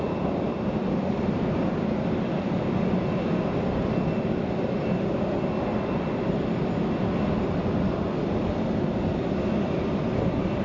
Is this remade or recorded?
recorded